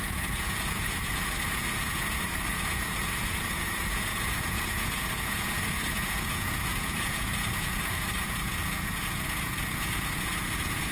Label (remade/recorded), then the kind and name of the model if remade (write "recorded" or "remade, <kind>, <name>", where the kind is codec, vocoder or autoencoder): remade, vocoder, Vocos